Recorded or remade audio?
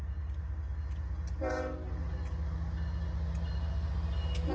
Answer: recorded